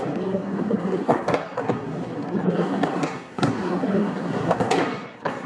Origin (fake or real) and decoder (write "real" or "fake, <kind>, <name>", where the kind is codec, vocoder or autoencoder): fake, codec, SNAC